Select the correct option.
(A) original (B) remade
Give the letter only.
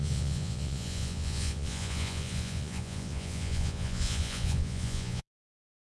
B